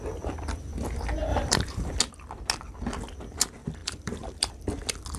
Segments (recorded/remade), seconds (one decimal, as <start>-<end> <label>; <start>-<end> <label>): 0.0-1.3 recorded; 1.3-2.0 remade; 2.0-3.8 recorded; 3.8-4.5 remade; 4.5-5.2 recorded